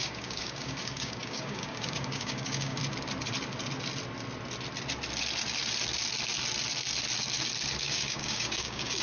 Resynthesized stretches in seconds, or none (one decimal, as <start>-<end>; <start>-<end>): 0.0-2.8; 7.8-9.0